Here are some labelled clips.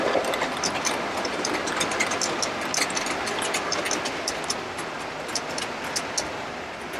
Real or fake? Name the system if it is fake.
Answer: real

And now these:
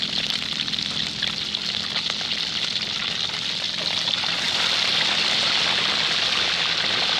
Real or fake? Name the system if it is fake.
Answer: real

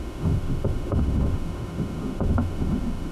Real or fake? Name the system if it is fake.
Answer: fake, autoencoder, DAC-VAE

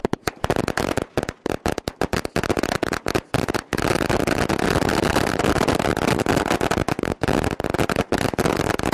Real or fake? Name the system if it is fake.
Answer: real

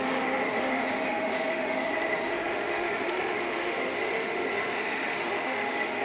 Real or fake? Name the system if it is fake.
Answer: fake, autoencoder, DAC-VAE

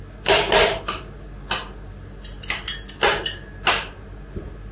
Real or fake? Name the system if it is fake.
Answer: real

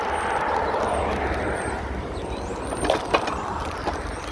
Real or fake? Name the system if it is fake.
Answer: real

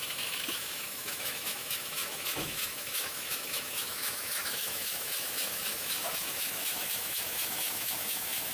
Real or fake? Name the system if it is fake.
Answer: fake, autoencoder, DAC-VAE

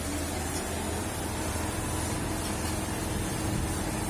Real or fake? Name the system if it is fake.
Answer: real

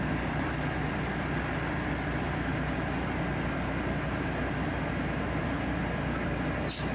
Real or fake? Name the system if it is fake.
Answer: real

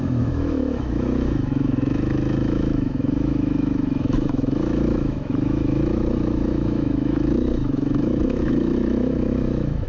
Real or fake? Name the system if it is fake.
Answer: fake, autoencoder, DAC-VAE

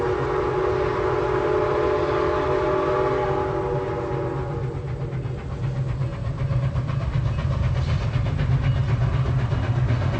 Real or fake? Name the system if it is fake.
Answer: real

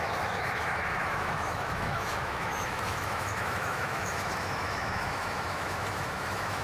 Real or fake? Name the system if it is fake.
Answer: fake, autoencoder, DAC-VAE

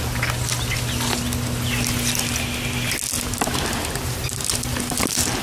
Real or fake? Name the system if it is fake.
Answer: real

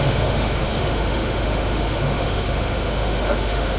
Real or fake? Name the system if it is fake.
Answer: fake, autoencoder, DAC-VAE